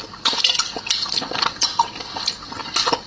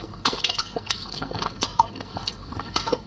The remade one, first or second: second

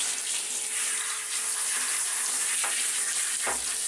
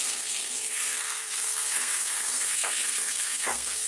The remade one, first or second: second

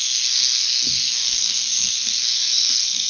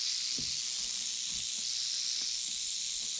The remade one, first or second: first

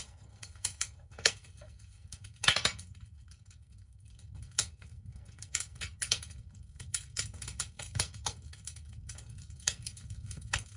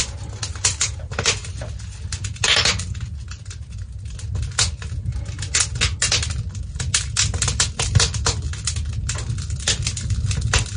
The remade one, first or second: first